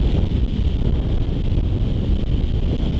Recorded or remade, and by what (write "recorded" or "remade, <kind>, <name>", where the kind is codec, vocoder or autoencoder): recorded